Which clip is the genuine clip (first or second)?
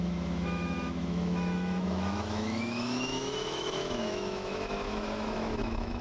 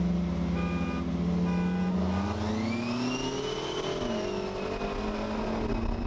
second